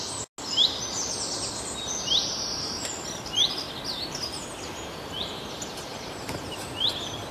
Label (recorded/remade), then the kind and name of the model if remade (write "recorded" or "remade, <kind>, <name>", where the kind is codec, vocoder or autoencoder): recorded